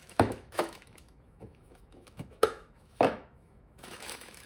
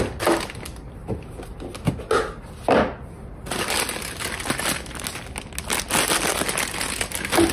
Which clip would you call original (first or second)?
second